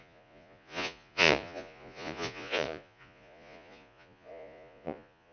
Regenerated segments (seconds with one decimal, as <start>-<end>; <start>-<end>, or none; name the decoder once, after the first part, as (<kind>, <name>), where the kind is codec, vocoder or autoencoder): 0.0-5.3 (vocoder, Vocos)